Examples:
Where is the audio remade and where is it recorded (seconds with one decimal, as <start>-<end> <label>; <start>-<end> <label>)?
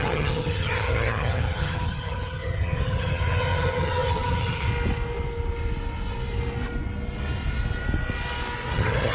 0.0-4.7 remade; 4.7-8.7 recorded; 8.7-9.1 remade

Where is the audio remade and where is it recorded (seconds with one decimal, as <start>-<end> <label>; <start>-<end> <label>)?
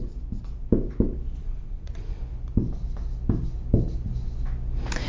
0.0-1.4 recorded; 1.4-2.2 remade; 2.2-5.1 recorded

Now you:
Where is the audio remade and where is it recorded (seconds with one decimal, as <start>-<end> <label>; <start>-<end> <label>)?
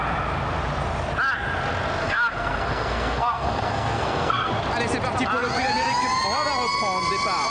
0.0-2.0 recorded; 2.0-4.5 remade; 4.5-7.5 recorded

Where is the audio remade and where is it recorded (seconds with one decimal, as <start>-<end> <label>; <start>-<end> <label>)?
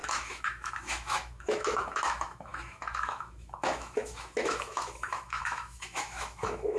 0.0-6.8 remade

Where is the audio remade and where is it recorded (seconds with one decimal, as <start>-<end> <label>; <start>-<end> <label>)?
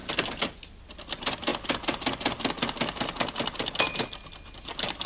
0.0-5.1 recorded